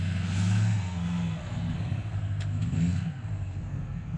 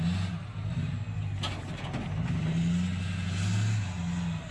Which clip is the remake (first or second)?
first